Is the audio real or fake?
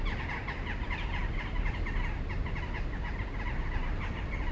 real